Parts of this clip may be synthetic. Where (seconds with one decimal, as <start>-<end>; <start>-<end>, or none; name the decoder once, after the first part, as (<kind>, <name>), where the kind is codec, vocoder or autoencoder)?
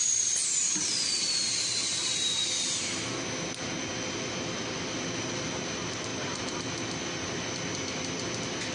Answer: 0.4-2.4 (vocoder, BigVGAN v2)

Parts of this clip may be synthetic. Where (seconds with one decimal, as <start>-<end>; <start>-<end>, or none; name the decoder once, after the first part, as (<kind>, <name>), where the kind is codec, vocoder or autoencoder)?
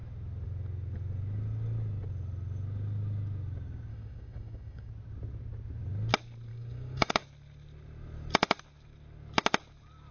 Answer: 3.9-4.9 (codec, DAC); 6.5-7.1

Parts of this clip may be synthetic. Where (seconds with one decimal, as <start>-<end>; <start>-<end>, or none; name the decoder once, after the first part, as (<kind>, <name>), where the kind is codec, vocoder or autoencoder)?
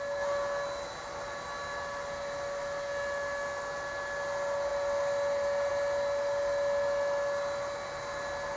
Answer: none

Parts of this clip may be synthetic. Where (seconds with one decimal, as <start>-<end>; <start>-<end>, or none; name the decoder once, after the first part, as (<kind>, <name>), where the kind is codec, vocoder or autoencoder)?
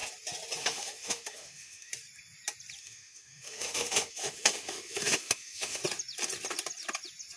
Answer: 0.6-1.9 (autoencoder, DAC-VAE); 2.8-5.8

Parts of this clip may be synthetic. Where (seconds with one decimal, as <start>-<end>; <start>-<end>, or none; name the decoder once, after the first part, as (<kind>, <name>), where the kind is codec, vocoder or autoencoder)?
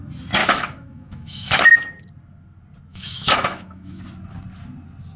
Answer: 0.4-1.6 (autoencoder, DAC-VAE); 2.9-4.0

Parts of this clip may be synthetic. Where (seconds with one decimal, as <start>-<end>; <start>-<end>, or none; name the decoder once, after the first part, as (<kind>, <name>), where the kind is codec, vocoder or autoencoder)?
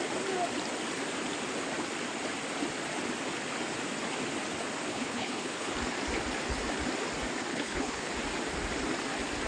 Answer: 4.9-5.7 (codec, HILCodec); 7.5-8.1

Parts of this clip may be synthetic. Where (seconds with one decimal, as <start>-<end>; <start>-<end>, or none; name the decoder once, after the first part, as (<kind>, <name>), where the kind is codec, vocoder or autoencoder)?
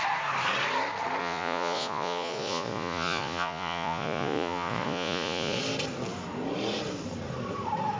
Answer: 1.2-5.6 (vocoder, Vocos)